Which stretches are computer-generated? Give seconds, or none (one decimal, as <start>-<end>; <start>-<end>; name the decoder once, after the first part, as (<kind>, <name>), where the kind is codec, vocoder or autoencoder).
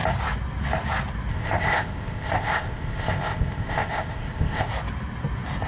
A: 1.3-4.7 (codec, ZipCodec)